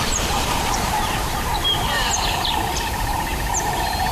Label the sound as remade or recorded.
remade